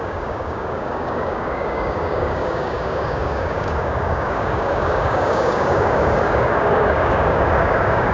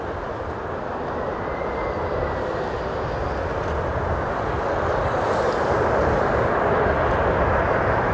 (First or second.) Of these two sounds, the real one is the second